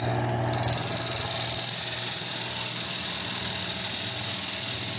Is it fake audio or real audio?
real